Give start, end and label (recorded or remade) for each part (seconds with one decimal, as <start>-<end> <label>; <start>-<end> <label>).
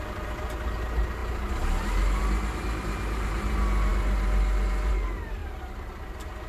0.0-5.4 recorded; 5.4-6.1 remade; 6.1-6.5 recorded